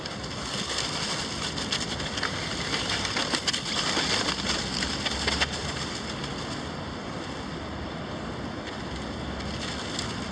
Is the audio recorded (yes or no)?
yes